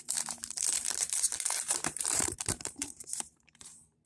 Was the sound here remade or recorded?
remade